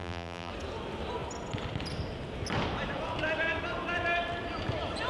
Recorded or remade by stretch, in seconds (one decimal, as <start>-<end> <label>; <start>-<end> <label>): 0.0-0.5 remade; 0.5-5.1 recorded